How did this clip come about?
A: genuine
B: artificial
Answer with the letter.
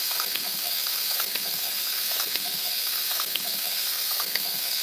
B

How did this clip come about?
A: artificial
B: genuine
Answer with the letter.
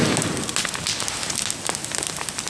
B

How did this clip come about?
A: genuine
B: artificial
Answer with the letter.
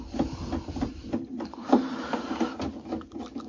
A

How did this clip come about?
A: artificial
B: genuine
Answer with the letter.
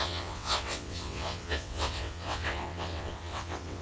A